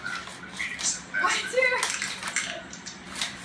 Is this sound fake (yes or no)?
no